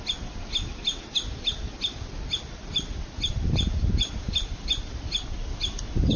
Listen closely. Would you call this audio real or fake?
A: real